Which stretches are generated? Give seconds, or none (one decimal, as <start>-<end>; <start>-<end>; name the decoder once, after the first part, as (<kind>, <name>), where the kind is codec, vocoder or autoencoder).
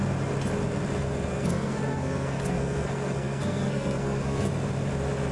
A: 1.3-4.5 (codec, SNAC)